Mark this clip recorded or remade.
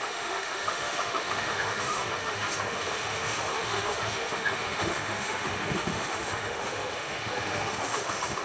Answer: remade